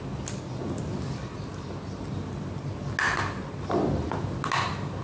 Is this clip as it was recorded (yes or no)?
yes